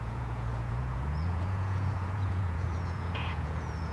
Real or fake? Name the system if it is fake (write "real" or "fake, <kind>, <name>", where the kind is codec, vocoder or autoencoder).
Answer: fake, vocoder, Vocos